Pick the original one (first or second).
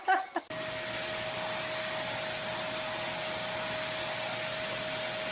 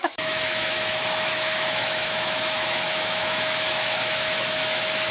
first